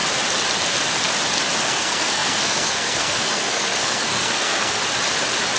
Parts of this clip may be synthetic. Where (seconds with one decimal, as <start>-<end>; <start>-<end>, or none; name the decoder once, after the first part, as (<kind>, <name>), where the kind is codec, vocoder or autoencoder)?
1.6-4.8 (codec, SNAC)